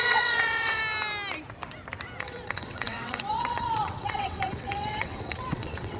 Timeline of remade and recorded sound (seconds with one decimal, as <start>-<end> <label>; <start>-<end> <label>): 0.0-0.8 remade; 0.8-2.2 recorded; 2.2-6.0 remade